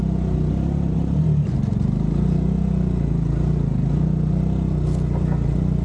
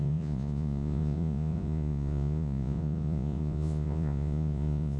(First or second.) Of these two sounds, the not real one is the second